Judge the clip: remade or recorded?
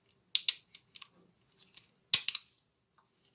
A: recorded